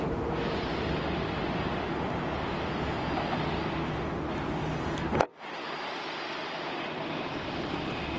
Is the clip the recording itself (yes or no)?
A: yes